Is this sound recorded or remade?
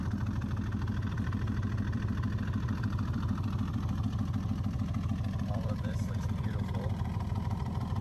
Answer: remade